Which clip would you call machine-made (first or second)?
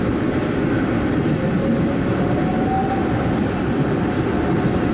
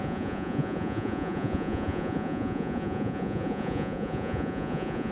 second